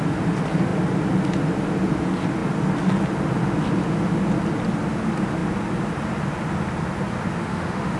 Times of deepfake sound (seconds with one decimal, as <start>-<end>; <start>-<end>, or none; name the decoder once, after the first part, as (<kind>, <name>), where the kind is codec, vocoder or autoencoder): 7.4-8.0 (autoencoder, DAC-VAE)